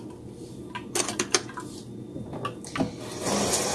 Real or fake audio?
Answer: real